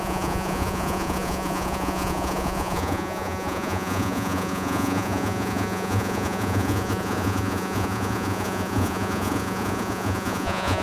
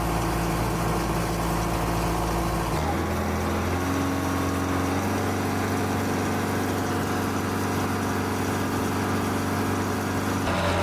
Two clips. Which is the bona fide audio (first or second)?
second